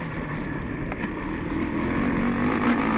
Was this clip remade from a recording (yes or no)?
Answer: no